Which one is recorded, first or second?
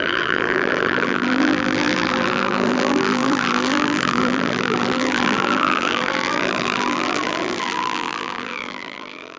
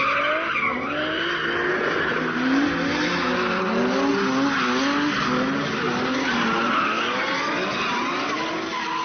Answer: second